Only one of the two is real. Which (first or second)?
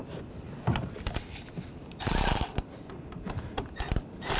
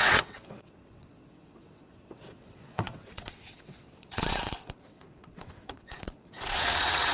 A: first